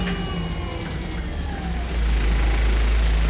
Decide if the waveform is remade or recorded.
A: recorded